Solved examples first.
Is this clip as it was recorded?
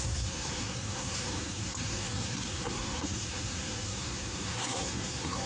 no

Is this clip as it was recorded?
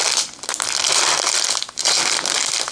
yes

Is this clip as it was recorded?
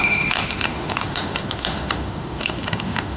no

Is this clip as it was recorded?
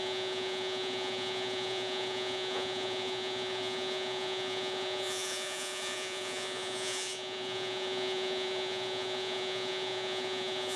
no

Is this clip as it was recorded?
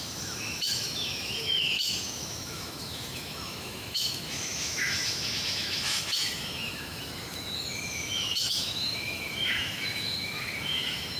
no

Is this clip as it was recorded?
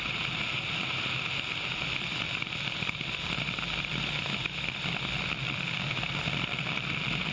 no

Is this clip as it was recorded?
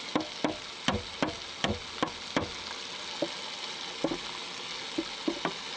yes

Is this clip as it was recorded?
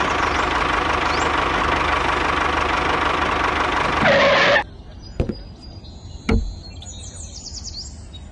yes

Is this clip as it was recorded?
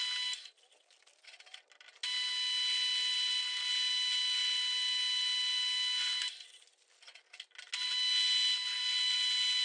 yes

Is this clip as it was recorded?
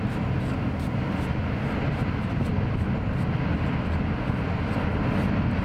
yes